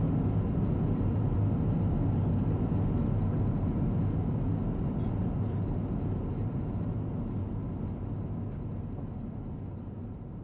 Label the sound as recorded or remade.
recorded